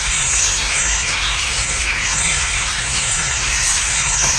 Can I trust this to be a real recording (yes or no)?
no